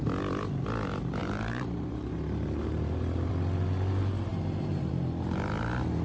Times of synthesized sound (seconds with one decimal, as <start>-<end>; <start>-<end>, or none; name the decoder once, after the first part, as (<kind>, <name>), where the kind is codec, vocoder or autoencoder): 1.2-3.3 (vocoder, BigVGAN v2); 4.3-4.9